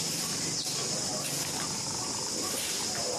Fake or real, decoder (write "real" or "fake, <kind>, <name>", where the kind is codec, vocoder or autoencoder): real